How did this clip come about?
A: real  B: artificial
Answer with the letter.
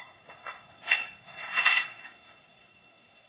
B